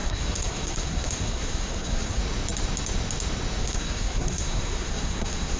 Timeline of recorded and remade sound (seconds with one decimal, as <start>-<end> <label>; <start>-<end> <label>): 0.0-2.2 remade; 2.2-3.6 recorded; 3.6-5.6 remade